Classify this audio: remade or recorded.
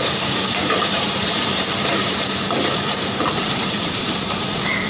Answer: remade